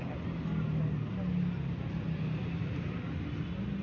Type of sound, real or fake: real